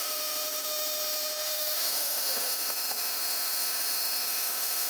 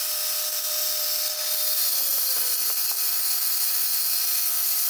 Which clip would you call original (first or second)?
second